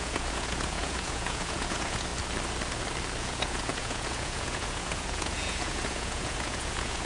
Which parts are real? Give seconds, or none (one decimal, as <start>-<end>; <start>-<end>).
2.1-3.2